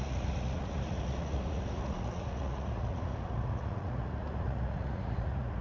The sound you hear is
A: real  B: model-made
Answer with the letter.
B